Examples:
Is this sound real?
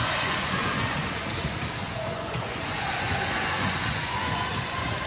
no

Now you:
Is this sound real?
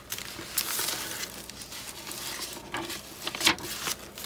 yes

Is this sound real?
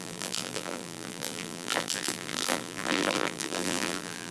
no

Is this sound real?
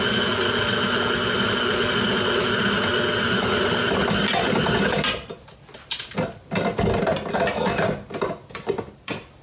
yes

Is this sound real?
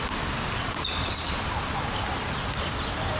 yes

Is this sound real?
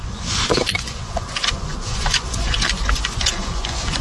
no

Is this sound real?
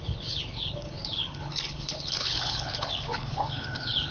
no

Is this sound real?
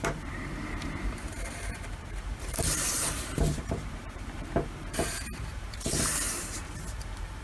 no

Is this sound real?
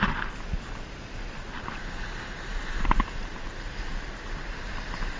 yes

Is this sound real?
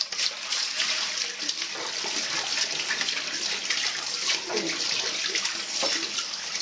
yes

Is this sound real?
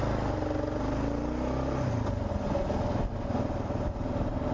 yes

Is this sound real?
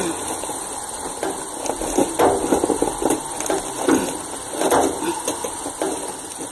yes